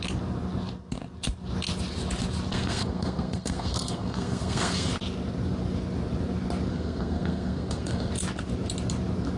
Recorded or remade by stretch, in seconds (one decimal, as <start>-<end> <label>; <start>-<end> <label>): 0.0-2.5 recorded; 2.5-4.9 remade; 4.9-6.7 recorded; 6.7-8.1 remade; 8.1-9.4 recorded